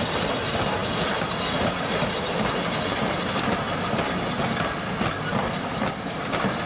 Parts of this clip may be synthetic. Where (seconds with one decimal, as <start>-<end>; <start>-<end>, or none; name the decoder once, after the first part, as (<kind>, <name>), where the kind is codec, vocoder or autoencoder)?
none